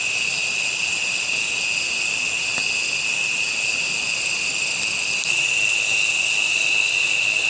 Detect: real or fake real